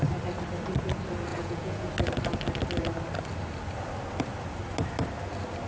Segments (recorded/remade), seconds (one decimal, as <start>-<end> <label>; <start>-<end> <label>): 0.0-1.3 recorded; 1.3-1.9 remade; 1.9-5.7 recorded